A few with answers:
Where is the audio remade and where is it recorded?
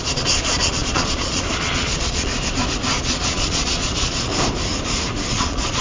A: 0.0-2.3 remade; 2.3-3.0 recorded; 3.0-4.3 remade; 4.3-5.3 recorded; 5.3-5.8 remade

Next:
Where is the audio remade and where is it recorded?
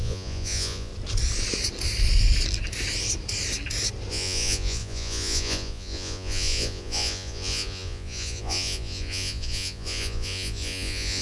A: 0.0-0.9 remade; 0.9-4.1 recorded; 4.1-11.2 remade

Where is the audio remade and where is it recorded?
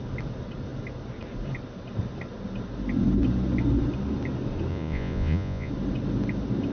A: 0.0-4.7 recorded; 4.7-5.7 remade; 5.7-6.7 recorded